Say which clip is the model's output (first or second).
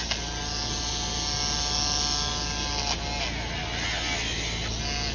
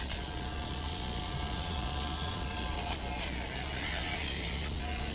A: second